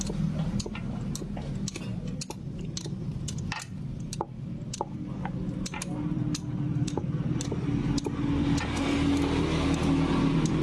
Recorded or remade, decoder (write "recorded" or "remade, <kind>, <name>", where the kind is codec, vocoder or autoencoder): recorded